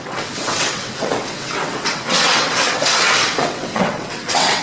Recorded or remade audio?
remade